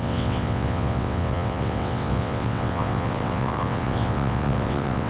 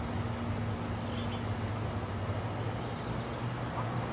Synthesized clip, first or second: first